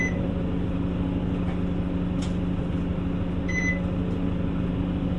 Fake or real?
real